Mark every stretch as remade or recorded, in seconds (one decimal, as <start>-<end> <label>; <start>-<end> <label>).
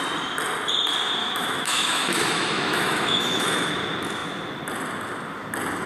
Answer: 0.0-1.2 recorded; 1.2-3.7 remade; 3.7-5.9 recorded